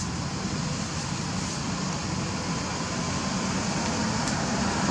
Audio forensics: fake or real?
real